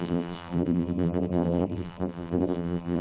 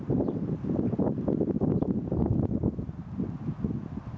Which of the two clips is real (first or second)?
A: second